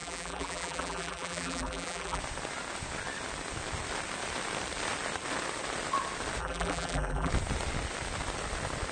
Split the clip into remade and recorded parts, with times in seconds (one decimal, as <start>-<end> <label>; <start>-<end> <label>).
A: 0.0-2.2 remade; 2.2-6.4 recorded; 6.4-7.3 remade; 7.3-8.9 recorded